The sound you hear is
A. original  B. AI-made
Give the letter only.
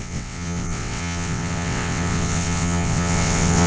B